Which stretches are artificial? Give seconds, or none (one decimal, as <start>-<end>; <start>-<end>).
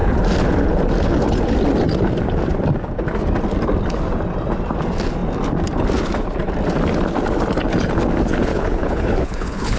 8.5-9.8